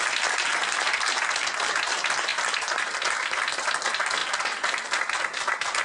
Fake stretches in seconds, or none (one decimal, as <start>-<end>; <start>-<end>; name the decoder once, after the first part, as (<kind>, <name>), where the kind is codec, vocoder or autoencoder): none